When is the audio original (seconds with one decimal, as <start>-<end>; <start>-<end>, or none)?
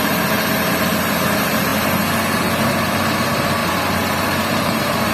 0.0-3.6